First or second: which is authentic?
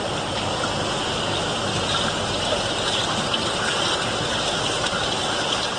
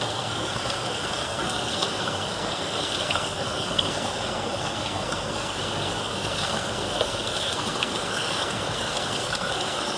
first